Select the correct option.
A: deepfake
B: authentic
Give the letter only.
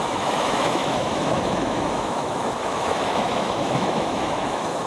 A